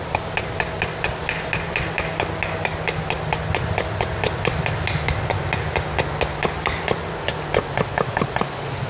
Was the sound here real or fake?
real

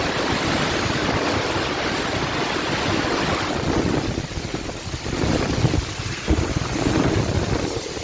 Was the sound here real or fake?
real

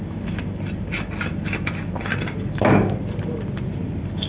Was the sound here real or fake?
real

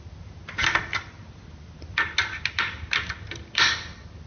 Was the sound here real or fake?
real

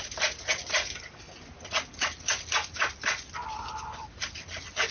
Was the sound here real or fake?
real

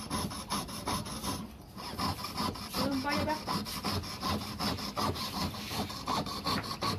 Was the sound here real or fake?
real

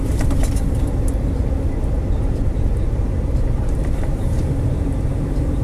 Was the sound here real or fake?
fake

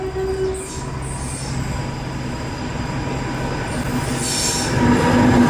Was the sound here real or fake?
real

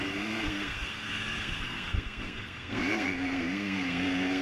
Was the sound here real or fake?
fake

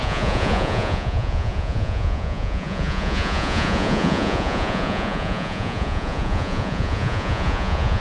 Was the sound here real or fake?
fake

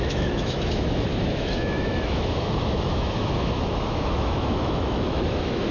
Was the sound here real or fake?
fake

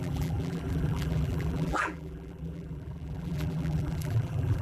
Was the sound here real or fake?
fake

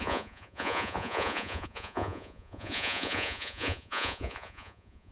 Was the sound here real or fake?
fake